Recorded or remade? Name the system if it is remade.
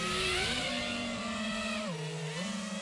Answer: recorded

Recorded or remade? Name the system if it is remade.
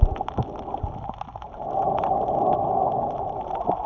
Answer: recorded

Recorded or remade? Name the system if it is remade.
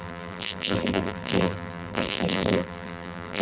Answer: remade, vocoder, BigVGAN v2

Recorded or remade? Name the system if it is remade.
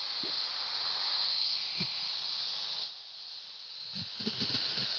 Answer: recorded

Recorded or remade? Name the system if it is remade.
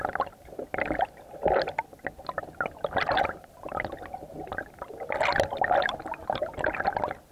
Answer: recorded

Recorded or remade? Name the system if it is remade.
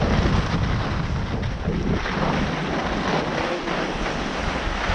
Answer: recorded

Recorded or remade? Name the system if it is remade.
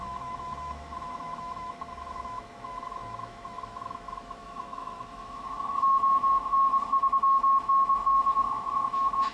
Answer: remade, autoencoder, DAC-VAE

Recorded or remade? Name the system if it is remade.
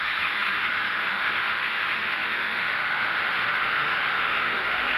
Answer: remade, autoencoder, DAC-VAE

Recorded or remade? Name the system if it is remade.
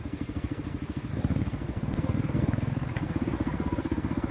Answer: remade, codec, SNAC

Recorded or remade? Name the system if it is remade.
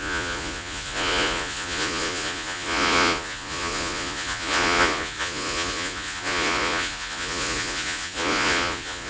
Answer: remade, vocoder, Vocos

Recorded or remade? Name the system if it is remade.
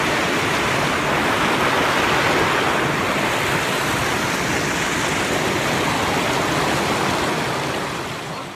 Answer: recorded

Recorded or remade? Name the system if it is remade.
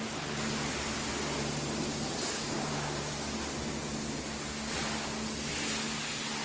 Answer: recorded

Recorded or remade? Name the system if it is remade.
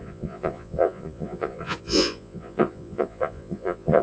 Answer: remade, vocoder, Vocos